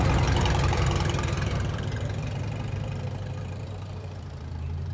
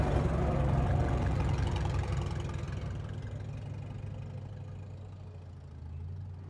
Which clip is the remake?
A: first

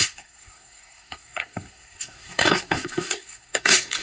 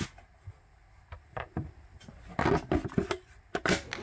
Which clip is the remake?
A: first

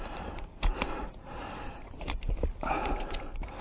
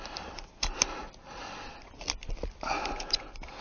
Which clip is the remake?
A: first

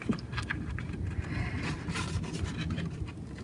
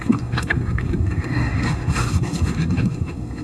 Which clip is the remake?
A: second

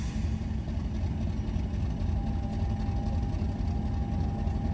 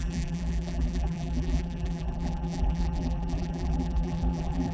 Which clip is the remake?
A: second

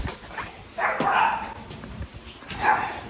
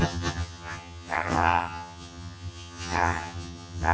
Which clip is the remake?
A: second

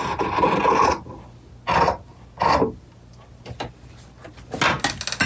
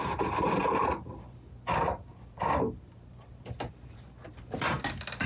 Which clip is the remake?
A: second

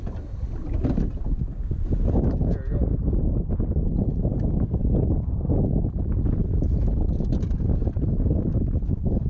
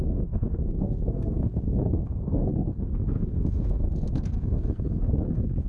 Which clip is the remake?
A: second